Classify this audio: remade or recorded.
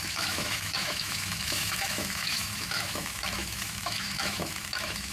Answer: remade